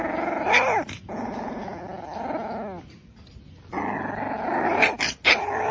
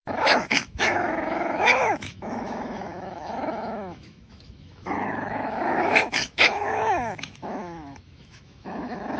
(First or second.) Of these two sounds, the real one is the first